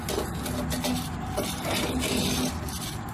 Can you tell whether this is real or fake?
real